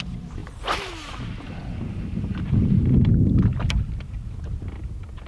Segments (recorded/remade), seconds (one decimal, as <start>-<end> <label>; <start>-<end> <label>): 0.0-5.3 recorded

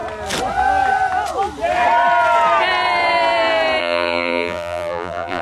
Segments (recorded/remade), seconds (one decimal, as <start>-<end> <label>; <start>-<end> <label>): 0.0-3.8 recorded; 3.8-5.4 remade

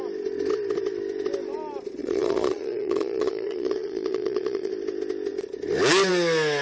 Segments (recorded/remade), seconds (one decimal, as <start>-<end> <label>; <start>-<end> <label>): 0.0-2.0 recorded; 2.0-4.7 remade; 4.7-6.6 recorded

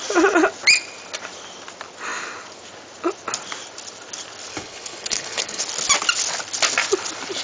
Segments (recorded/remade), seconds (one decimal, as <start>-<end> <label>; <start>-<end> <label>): 0.0-4.5 recorded; 4.5-5.6 remade; 5.6-7.4 recorded